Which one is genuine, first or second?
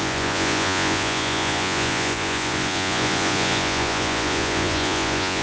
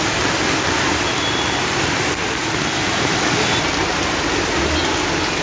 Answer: second